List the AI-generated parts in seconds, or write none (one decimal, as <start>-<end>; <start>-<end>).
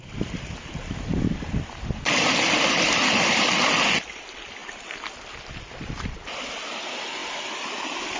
none